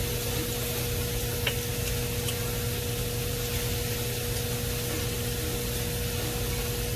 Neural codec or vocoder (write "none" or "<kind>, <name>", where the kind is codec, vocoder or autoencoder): none